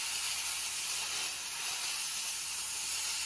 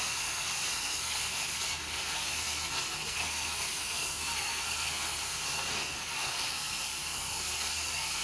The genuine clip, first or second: first